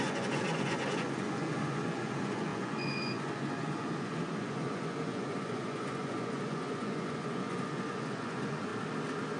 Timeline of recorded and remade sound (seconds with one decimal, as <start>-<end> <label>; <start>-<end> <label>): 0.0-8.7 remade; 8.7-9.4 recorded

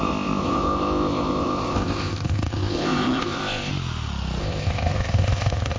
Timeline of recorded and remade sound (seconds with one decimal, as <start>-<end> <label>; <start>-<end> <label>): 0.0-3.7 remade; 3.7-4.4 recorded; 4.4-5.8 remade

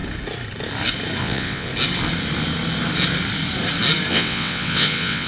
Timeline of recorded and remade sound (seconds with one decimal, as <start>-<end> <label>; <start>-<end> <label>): 0.0-1.2 recorded; 1.2-1.7 remade; 1.7-4.1 recorded; 4.1-5.3 remade

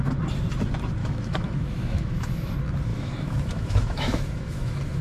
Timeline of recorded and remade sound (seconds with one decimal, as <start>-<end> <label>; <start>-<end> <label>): 0.0-1.0 recorded; 1.0-2.5 remade; 2.5-2.9 recorded; 2.9-5.0 remade

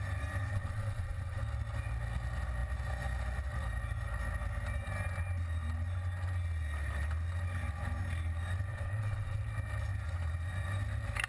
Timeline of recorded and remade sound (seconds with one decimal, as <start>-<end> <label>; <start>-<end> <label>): 0.0-0.4 recorded; 0.4-1.4 remade; 1.4-8.7 recorded; 8.7-9.4 remade; 9.4-11.3 recorded